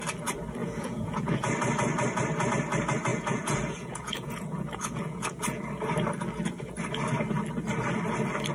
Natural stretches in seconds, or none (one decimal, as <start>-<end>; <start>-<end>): 0.0-0.6; 1.5-3.1; 5.6-8.5